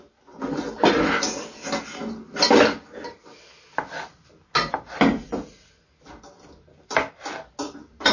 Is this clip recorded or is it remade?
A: recorded